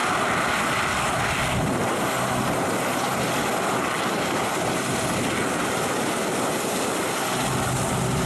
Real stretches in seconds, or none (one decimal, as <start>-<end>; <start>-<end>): 0.0-8.3